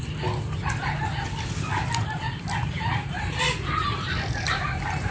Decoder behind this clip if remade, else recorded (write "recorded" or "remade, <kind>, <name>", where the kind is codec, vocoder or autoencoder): recorded